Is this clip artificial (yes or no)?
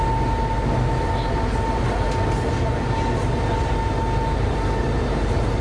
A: no